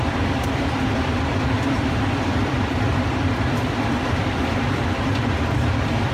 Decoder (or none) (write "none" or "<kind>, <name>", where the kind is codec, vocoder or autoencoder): vocoder, BigVGAN v2